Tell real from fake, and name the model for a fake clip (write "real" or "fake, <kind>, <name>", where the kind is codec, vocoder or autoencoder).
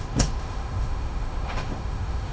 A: fake, autoencoder, DAC-VAE